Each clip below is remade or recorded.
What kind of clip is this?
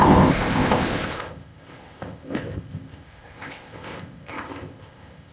remade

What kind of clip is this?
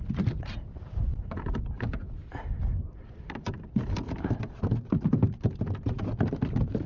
remade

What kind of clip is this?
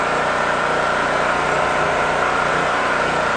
remade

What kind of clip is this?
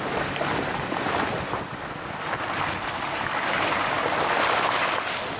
recorded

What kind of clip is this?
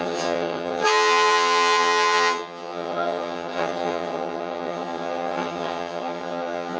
remade